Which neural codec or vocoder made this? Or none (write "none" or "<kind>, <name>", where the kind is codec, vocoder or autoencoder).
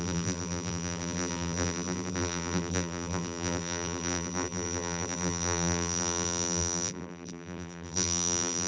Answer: vocoder, BigVGAN v2